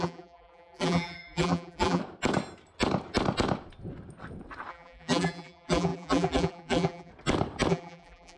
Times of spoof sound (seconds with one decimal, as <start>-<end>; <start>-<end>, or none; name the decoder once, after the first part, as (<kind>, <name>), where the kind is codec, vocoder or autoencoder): 0.0-2.0 (vocoder, BigVGAN v2); 4.7-7.1; 7.7-8.4